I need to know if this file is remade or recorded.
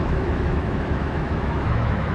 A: remade